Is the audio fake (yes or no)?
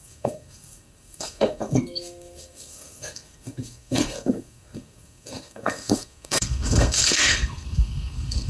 yes